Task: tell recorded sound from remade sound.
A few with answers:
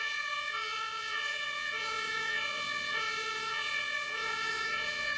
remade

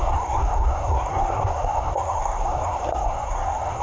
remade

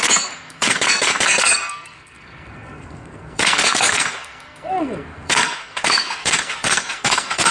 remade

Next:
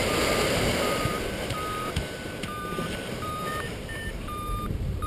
remade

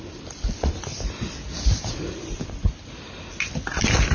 recorded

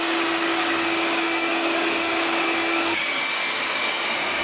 remade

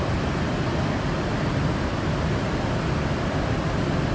recorded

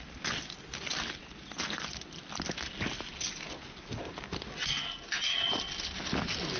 recorded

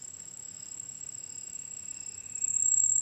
remade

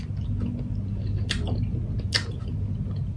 recorded